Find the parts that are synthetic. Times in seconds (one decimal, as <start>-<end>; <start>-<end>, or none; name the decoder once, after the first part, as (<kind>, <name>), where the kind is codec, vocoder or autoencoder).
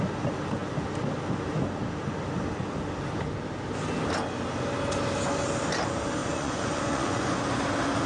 6.2-7.4 (vocoder, Vocos)